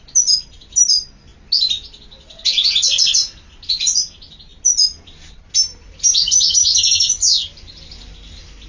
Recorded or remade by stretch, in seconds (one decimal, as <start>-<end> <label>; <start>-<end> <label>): 0.0-8.7 recorded